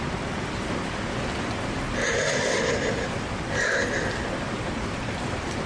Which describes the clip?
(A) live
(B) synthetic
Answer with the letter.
A